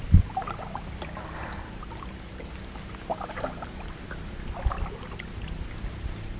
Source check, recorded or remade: recorded